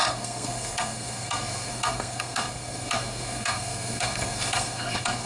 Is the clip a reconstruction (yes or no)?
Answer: yes